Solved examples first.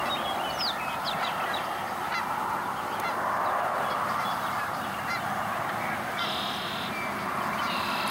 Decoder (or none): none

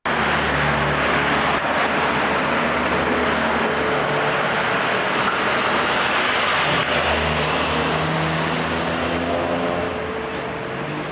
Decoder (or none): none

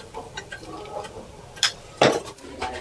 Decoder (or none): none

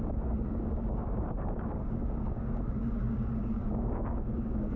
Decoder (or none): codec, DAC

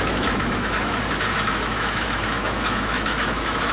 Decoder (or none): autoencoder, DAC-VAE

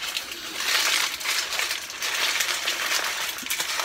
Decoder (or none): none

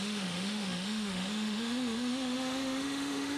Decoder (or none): autoencoder, DAC-VAE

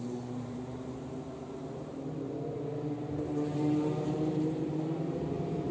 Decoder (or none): vocoder, BigVGAN v2